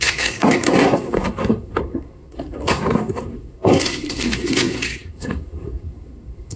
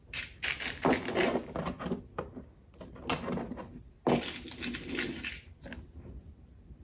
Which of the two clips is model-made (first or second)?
first